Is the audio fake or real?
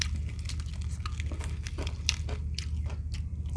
real